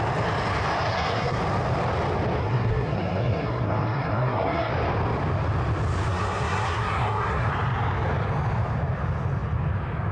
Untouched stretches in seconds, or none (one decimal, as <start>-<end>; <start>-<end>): 0.0-0.9; 1.4-2.4; 4.7-6.1; 7.5-10.1